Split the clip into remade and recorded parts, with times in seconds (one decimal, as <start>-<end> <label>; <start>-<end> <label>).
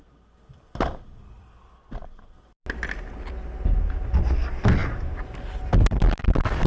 0.0-6.7 recorded